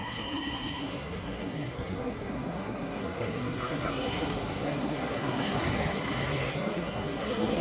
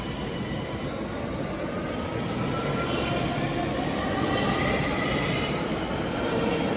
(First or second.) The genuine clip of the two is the second